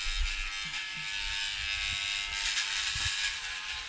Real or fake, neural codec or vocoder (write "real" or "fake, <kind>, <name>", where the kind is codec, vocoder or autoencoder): real